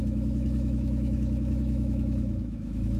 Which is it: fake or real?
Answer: fake